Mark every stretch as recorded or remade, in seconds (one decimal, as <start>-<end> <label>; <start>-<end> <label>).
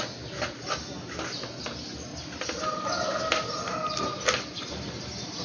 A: 0.0-5.4 recorded